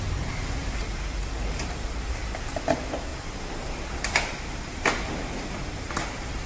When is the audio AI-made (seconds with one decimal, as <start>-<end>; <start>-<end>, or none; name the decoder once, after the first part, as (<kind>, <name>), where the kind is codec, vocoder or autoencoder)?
0.6-2.2 (vocoder, BigVGAN v2); 3.1-6.5